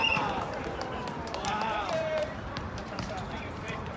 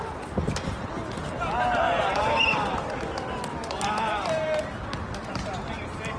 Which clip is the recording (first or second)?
second